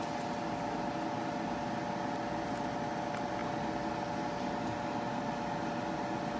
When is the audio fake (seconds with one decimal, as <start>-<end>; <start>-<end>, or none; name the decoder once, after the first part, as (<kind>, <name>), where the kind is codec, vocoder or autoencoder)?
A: none